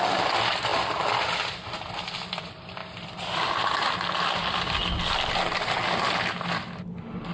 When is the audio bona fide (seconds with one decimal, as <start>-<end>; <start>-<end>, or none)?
0.0-0.7; 1.9-2.8; 4.5-7.3